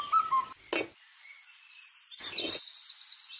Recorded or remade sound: recorded